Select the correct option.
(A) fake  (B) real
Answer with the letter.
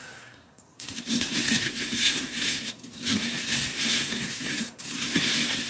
A